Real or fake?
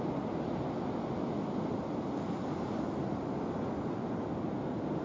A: real